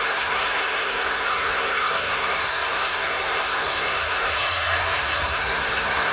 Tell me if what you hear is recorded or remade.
remade